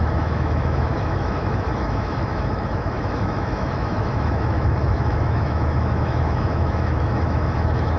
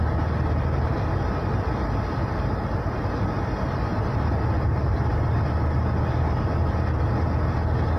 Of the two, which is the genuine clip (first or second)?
second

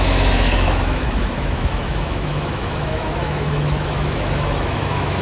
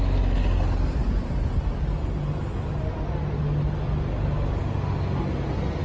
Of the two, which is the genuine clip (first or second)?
second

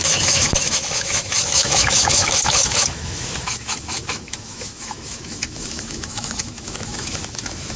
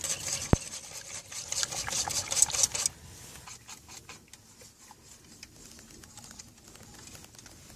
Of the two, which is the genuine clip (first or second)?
second